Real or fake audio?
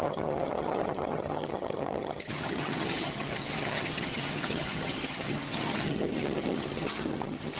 fake